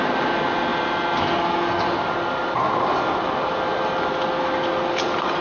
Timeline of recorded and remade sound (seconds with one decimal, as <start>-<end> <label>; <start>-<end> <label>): 0.0-5.4 recorded